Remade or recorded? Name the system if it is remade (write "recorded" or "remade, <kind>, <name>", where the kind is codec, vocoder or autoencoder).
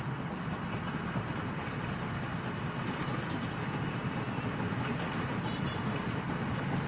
recorded